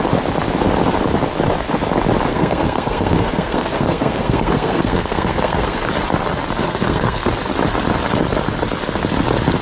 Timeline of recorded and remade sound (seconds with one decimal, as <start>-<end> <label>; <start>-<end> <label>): 0.0-2.3 recorded; 2.3-5.9 remade; 5.9-6.6 recorded; 6.6-7.3 remade; 7.3-9.6 recorded